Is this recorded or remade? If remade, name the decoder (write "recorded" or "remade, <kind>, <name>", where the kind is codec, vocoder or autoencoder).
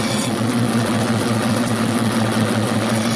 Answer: remade, vocoder, WaveNeXt